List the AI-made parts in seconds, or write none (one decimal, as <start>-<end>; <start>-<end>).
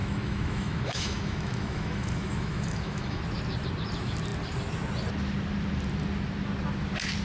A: 0.0-3.2